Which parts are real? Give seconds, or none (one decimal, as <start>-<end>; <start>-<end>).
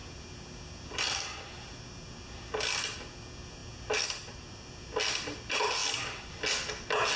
0.0-7.2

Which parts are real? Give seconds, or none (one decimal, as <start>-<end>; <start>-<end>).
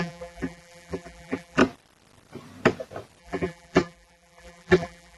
1.6-3.2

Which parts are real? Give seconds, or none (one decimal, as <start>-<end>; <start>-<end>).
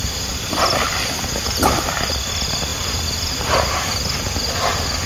0.0-5.1